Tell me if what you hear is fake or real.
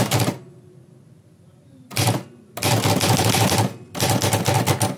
real